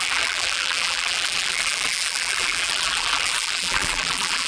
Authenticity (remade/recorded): remade